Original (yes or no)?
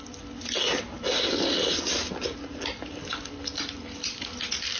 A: yes